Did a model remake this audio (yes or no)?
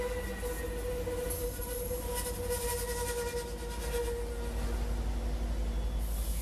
no